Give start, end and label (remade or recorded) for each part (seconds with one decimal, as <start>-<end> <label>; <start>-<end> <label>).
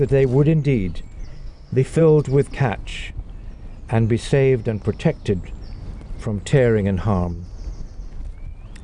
0.0-1.3 recorded; 1.3-2.0 remade; 2.0-8.8 recorded